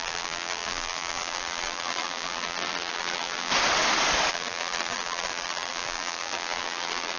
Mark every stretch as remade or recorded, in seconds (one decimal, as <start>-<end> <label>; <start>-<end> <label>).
0.0-3.5 remade; 3.5-4.3 recorded; 4.3-7.2 remade